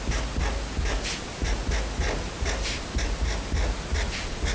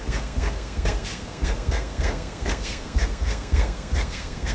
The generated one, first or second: second